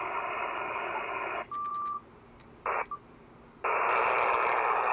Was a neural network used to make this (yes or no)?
no